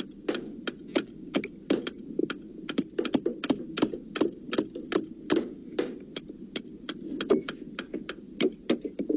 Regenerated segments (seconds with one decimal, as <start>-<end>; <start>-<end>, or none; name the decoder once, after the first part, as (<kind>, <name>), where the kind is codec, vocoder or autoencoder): none